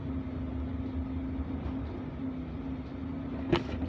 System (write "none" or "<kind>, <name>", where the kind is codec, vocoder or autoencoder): none